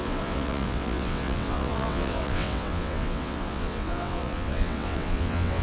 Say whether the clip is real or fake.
fake